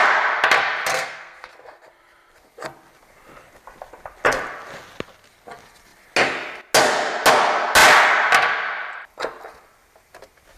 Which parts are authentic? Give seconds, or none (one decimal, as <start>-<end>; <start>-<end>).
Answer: 0.0-0.9; 1.5-10.6